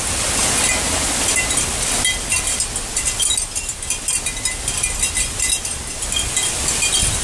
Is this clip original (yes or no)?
yes